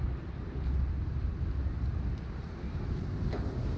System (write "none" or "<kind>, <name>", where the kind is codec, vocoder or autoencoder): none